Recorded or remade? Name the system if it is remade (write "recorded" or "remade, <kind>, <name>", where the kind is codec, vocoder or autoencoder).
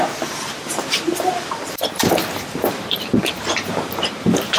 remade, vocoder, BigVGAN v2